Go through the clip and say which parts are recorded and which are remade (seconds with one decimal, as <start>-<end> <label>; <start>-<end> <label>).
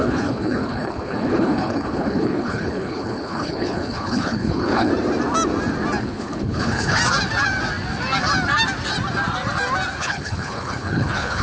0.0-4.9 remade; 4.9-6.0 recorded; 6.0-7.0 remade; 7.0-10.0 recorded; 10.0-11.4 remade